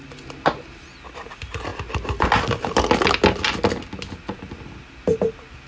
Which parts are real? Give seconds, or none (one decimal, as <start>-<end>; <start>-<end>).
0.0-5.7